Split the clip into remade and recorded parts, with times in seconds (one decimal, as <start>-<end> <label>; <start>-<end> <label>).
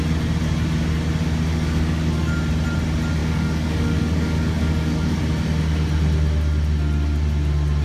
0.0-1.5 recorded; 1.5-2.3 remade; 2.3-3.2 recorded; 3.2-5.2 remade; 5.2-7.8 recorded